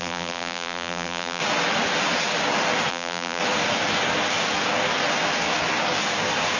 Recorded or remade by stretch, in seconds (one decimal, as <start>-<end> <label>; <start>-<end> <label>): 0.0-1.4 remade; 1.4-2.9 recorded; 2.9-3.4 remade; 3.4-6.6 recorded